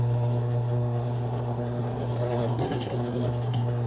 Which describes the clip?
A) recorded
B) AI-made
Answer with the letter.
B